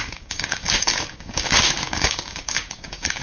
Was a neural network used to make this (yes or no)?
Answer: yes